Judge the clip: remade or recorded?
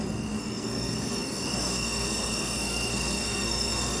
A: remade